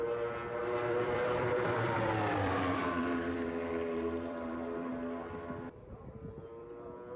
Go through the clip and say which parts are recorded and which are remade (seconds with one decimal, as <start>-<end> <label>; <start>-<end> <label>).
0.0-0.6 recorded; 0.6-4.9 remade; 4.9-7.2 recorded